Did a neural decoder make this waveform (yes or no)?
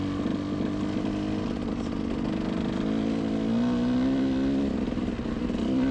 no